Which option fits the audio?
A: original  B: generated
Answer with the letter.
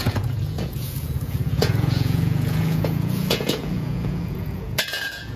B